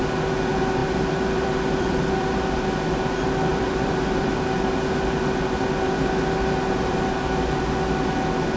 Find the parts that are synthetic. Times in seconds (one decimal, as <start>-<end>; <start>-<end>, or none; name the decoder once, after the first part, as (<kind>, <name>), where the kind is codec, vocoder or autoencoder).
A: 0.8-2.6 (vocoder, BigVGAN v2); 3.5-4.3